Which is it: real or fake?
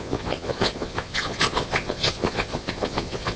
fake